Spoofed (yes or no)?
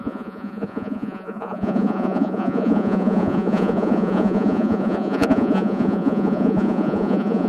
yes